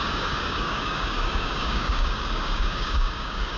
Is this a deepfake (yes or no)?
yes